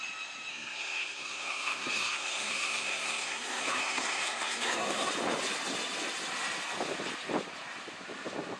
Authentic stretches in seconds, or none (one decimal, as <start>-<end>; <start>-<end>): 0.0-0.5; 5.1-8.6